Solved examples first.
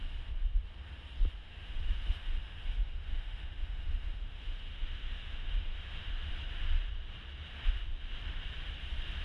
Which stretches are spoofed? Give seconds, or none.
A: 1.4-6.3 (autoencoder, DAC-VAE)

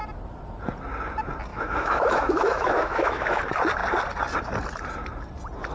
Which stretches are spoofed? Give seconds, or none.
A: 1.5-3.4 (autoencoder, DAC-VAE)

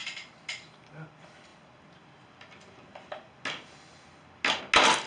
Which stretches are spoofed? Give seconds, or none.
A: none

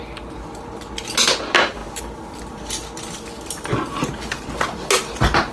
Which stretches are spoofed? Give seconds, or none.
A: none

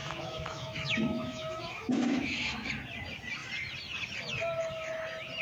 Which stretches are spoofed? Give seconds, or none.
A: 0.0-2.7 (autoencoder, DAC-VAE)

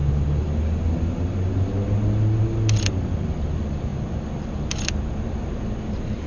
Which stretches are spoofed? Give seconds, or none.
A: none